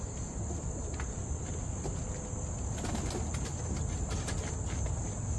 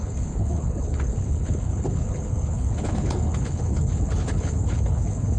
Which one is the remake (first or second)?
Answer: second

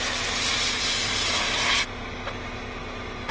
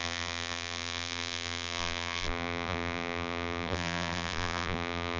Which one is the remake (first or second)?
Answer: second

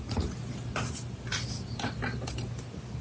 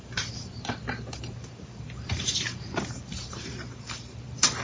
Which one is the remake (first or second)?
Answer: second